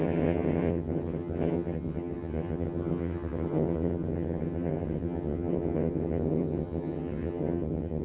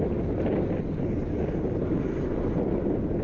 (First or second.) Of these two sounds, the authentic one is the second